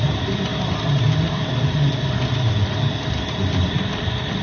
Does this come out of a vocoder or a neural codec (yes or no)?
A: yes